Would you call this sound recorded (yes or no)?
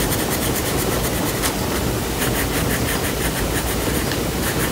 no